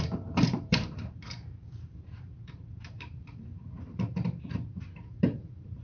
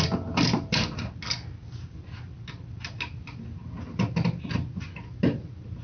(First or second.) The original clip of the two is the second